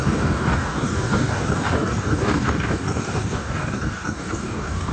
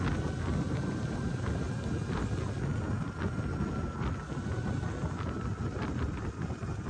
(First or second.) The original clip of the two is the second